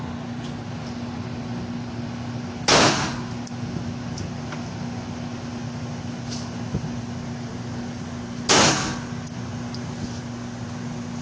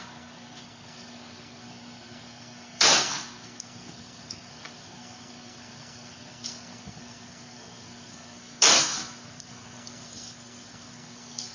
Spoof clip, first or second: second